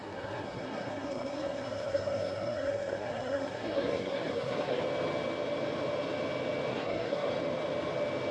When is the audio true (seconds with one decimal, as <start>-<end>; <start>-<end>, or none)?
4.8-6.7; 7.3-8.3